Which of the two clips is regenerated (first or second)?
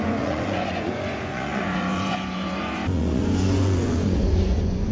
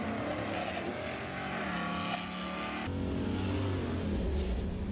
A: first